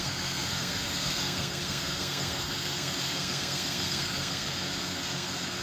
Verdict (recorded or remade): remade